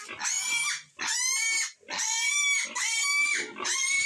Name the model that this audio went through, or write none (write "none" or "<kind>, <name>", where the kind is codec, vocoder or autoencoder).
none